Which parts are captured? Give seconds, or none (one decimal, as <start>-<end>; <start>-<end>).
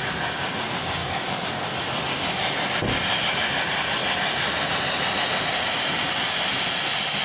0.0-1.0; 1.8-7.2